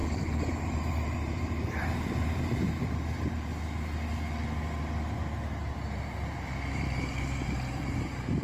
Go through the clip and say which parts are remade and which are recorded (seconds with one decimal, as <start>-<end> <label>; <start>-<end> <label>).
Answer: 0.0-3.5 remade; 3.5-5.6 recorded; 5.6-8.4 remade